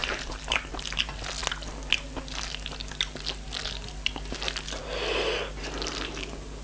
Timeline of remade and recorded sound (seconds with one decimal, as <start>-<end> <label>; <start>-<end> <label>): 0.0-0.7 remade; 0.7-6.6 recorded

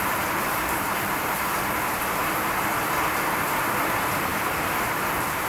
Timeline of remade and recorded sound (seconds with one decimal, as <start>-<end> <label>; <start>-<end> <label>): 0.0-2.2 remade; 2.2-2.8 recorded; 2.8-5.5 remade

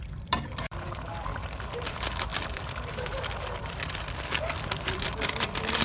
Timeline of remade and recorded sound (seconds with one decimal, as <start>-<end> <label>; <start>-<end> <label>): 0.0-5.8 remade

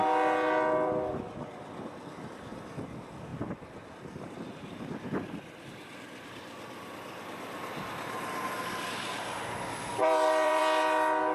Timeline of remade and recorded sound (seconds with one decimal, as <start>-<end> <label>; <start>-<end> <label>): 0.0-10.0 recorded; 10.0-10.6 remade; 10.6-11.3 recorded

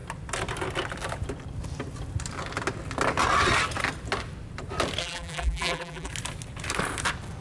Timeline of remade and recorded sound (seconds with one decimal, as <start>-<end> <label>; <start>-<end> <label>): 0.0-5.0 recorded; 5.0-6.1 remade; 6.1-7.4 recorded

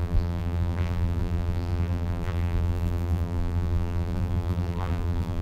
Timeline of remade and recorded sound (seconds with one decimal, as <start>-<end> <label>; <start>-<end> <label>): 0.0-5.4 remade

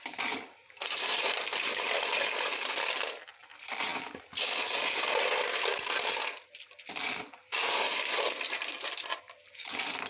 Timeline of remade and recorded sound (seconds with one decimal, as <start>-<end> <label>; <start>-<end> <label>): 0.0-10.1 recorded

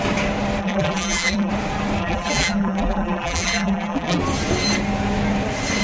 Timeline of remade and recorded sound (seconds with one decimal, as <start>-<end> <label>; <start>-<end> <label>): 0.0-0.6 recorded; 0.6-1.5 remade; 1.5-2.0 recorded; 2.0-4.2 remade; 4.2-5.8 recorded